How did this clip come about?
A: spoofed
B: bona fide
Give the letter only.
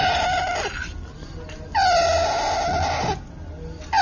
B